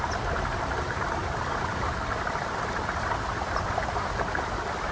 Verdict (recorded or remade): recorded